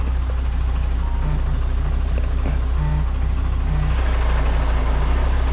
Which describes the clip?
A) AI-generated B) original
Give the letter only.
B